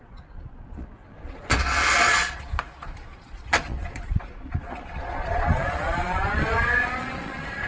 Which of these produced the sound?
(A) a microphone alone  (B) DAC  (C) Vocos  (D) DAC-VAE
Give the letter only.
C